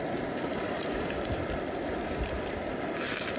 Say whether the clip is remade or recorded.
remade